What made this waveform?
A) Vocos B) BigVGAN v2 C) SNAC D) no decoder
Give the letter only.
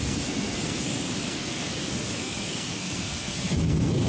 C